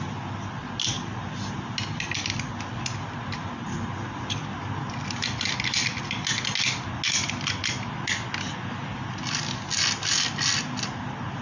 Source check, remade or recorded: recorded